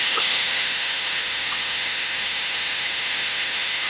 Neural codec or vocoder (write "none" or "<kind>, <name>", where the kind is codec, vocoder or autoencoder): autoencoder, DAC-VAE